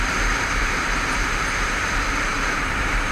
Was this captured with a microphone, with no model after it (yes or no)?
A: no